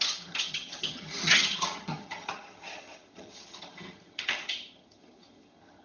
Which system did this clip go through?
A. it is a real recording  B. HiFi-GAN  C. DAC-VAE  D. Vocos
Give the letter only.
B